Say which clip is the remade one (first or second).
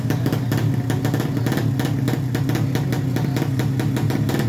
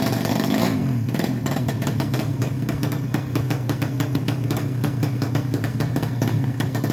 second